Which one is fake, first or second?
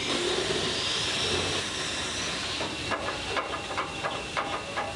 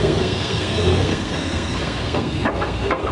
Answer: second